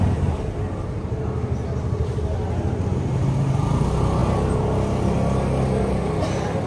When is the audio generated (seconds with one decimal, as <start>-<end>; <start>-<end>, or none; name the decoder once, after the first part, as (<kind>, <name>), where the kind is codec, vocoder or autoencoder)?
none